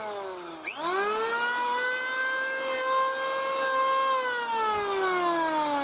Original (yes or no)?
yes